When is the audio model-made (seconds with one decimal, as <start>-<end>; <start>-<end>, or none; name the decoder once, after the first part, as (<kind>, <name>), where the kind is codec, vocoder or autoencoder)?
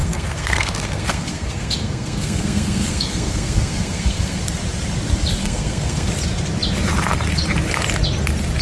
0.0-4.4 (codec, SNAC); 5.4-6.1